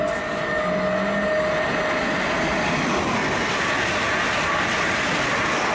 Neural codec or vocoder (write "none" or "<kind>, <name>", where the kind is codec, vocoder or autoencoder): none